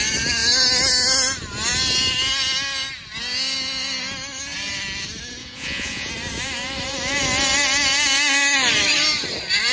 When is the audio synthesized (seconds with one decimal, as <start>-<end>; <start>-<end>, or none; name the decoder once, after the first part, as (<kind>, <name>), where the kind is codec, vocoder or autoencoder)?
5.4-6.1 (vocoder, Vocos)